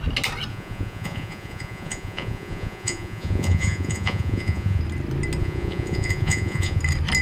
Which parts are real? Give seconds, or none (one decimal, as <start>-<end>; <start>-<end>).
0.0-0.5; 4.8-5.4; 6.8-7.2